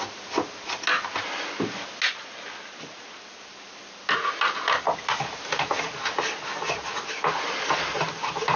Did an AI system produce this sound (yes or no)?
no